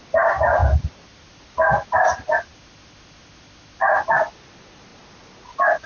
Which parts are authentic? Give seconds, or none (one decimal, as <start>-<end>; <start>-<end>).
0.0-5.9